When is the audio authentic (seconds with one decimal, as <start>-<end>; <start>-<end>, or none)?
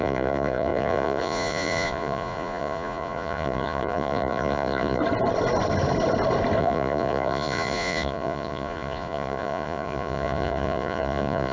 5.0-6.6